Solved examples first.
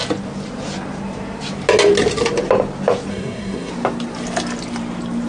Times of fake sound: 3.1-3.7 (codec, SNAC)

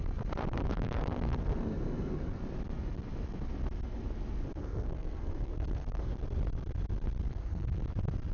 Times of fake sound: 0.4-2.4 (codec, SNAC); 4.6-6.1; 7.3-7.9

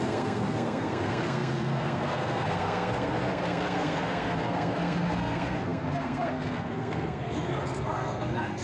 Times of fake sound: 0.0-8.6 (codec, SNAC)

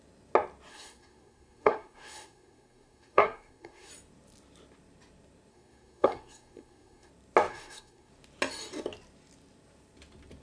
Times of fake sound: 0.7-3.9 (codec, SNAC); 5.5-7.1; 7.5-8.1